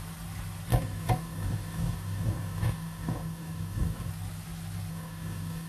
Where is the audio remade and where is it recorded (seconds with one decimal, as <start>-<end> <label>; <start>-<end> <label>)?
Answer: 0.0-0.7 recorded; 0.7-4.1 remade; 4.1-4.9 recorded; 4.9-5.7 remade